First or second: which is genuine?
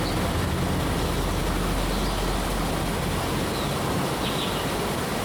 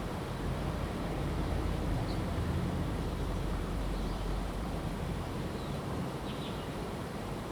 first